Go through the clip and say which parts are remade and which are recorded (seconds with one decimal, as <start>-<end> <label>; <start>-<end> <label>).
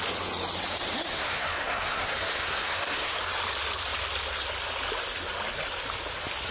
0.0-1.1 recorded; 1.1-3.2 remade; 3.2-6.5 recorded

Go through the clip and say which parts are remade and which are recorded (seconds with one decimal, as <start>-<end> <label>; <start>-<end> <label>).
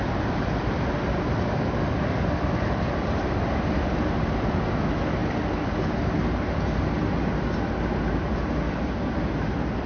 0.0-9.9 recorded